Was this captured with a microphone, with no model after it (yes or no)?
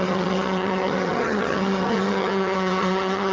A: no